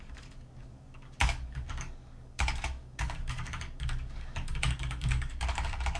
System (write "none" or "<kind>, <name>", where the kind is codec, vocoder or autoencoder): codec, DAC